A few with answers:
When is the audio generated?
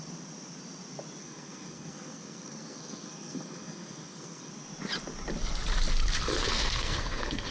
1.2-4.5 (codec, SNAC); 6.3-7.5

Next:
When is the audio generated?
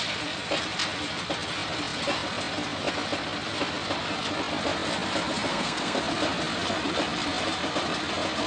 5.5-6.0 (codec, SNAC)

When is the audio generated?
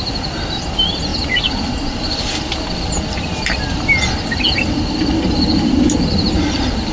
none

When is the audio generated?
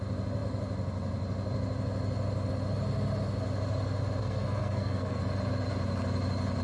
4.2-5.2 (codec, SNAC)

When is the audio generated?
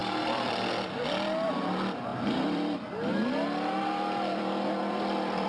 0.0-0.7 (vocoder, BigVGAN v2); 2.1-5.5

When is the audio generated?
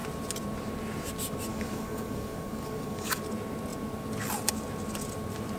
1.5-3.2 (codec, DAC)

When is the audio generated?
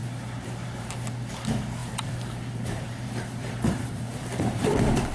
1.8-5.1 (vocoder, BigVGAN v2)